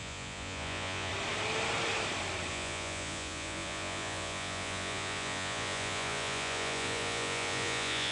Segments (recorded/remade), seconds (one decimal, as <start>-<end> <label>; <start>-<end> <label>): 0.0-1.1 remade; 1.1-2.5 recorded; 2.5-8.1 remade